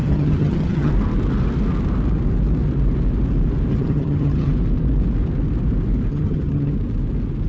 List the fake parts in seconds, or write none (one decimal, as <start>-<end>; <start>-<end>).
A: 0.0-0.9; 3.7-4.5; 6.1-6.7